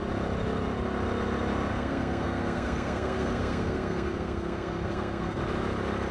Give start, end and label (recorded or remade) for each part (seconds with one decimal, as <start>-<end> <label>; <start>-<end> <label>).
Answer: 0.0-1.7 recorded; 1.7-5.4 remade; 5.4-6.1 recorded